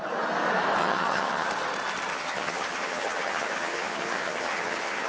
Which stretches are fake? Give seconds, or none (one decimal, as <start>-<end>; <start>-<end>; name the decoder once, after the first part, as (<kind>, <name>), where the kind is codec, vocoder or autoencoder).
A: 0.8-1.5 (vocoder, HiFi-GAN); 2.1-5.1